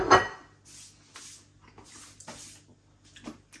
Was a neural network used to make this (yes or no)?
no